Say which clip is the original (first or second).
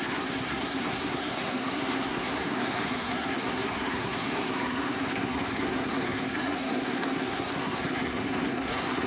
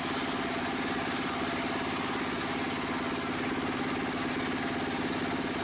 second